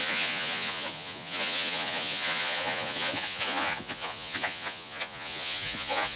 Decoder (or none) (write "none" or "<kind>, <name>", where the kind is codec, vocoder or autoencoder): vocoder, Vocos